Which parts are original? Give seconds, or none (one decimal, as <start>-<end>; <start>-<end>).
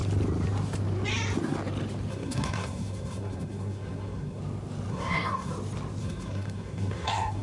0.0-2.1; 4.4-4.9; 5.5-6.0